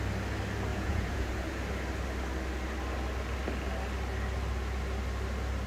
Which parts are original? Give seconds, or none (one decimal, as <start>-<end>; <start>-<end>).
0.0-0.7; 1.3-5.7